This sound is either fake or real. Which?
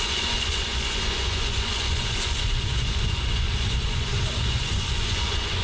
fake